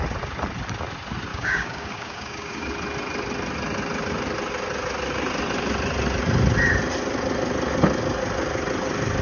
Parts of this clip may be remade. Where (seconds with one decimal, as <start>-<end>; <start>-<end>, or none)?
1.3-2.7